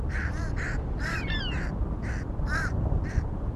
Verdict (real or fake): real